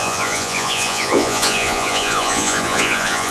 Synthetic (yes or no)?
yes